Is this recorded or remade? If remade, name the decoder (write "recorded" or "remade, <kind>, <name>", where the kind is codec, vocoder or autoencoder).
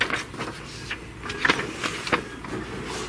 recorded